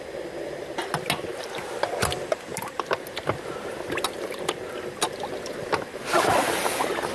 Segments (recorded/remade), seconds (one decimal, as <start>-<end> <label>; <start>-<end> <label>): 0.0-7.1 recorded